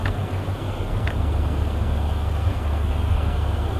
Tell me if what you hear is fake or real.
fake